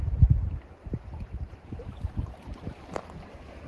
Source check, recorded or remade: remade